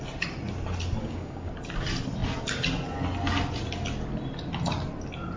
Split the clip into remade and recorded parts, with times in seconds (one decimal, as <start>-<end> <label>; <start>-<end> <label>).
0.0-1.0 recorded; 1.0-1.5 remade; 1.5-5.4 recorded